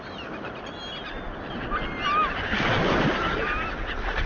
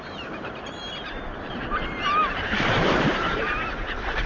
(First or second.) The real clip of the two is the first